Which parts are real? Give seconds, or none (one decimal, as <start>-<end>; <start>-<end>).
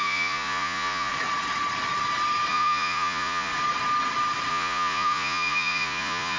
1.1-2.5; 3.5-4.5